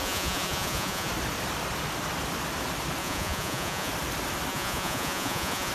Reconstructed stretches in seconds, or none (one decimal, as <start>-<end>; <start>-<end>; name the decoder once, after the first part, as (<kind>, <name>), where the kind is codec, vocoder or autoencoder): 0.0-1.1 (vocoder, Vocos); 3.0-3.9; 4.5-5.7